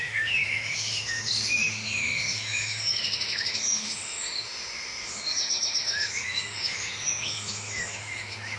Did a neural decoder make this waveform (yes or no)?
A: yes